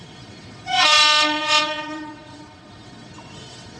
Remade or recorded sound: remade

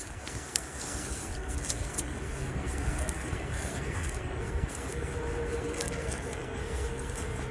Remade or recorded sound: remade